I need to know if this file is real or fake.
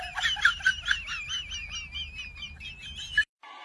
real